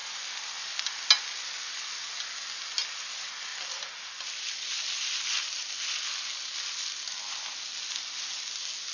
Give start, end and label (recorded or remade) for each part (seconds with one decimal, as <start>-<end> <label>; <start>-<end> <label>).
0.0-8.9 recorded